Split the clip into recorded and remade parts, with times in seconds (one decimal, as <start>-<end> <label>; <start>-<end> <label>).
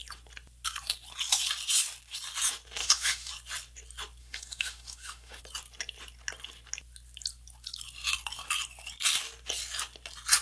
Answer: 0.0-2.8 recorded; 2.8-3.3 remade; 3.3-4.2 recorded; 4.2-5.4 remade; 5.4-10.4 recorded